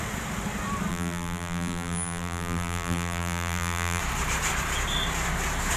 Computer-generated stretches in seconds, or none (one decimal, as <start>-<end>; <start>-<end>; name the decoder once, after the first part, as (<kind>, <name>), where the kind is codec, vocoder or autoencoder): 0.9-4.0 (vocoder, BigVGAN v2)